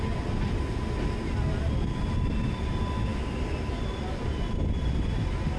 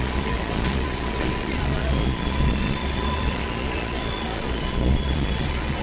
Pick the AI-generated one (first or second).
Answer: second